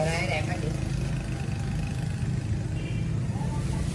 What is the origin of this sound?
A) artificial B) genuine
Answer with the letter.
B